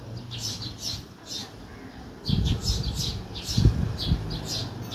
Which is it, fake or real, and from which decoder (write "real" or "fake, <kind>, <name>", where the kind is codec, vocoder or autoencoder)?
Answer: real